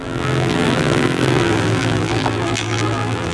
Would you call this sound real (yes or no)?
no